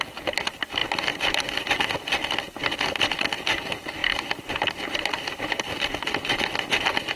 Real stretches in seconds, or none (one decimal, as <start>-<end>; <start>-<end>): 0.0-7.2